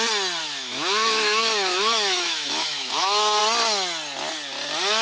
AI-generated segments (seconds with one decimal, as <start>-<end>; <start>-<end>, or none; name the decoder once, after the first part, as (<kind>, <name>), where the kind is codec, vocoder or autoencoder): 0.4-3.4 (autoencoder, DAC-VAE)